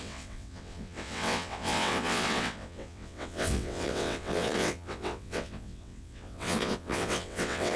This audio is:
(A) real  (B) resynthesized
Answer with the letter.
B